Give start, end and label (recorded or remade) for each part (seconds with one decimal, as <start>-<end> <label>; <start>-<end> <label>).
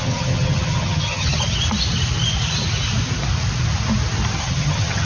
0.0-1.3 remade; 1.3-4.4 recorded; 4.4-5.1 remade